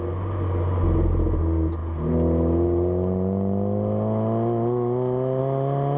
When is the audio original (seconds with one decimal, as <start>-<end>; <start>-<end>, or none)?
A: 0.0-6.0